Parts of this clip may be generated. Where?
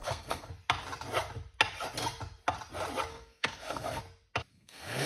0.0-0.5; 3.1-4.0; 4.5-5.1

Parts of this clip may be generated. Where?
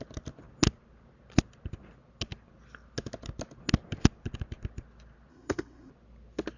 5.3-5.9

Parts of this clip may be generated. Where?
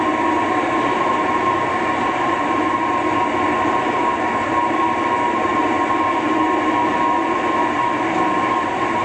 none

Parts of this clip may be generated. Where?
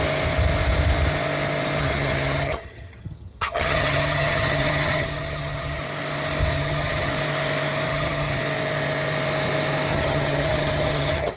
1.8-5.8; 6.5-7.1; 7.9-8.4; 9.9-11.4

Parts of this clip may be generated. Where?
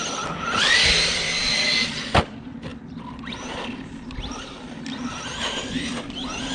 0.0-1.4; 2.2-2.7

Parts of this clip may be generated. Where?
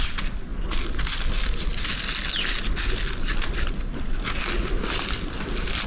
0.5-2.1; 3.3-4.4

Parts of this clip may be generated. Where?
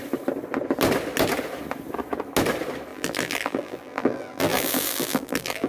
2.9-5.7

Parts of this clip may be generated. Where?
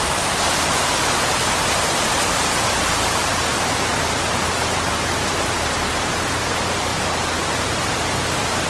0.0-6.9; 7.4-8.7